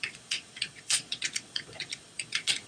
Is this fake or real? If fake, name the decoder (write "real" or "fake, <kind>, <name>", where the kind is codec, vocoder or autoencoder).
fake, vocoder, Vocos